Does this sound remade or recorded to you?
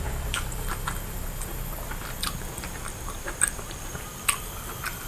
remade